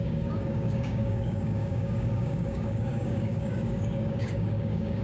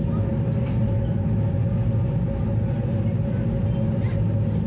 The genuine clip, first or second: second